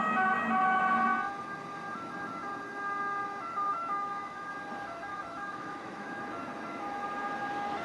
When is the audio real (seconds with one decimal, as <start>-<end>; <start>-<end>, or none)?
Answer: 0.0-3.7; 4.5-5.1; 6.2-7.8